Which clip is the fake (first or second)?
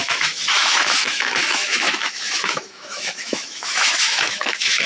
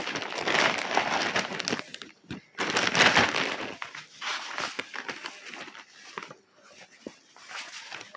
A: first